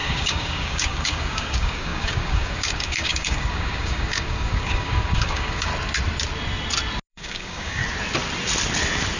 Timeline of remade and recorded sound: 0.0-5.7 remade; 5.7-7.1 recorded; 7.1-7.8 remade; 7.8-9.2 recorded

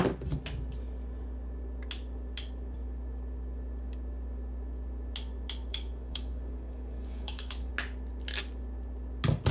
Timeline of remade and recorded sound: 0.0-5.7 recorded; 5.7-7.7 remade; 7.7-9.5 recorded

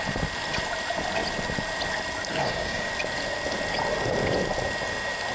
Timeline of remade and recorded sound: 0.0-2.3 recorded; 2.3-2.9 remade; 2.9-5.3 recorded

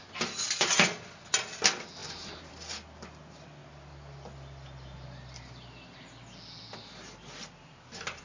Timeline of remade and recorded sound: 0.0-8.2 recorded